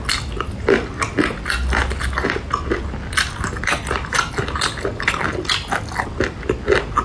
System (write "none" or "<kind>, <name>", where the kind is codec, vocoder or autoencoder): none